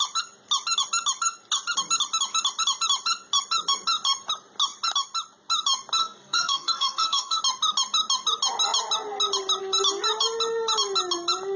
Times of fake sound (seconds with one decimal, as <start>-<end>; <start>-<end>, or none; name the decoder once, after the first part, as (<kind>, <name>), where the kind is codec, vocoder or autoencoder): 6.0-7.4 (codec, SNAC)